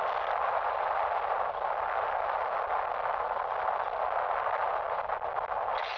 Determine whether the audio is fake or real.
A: real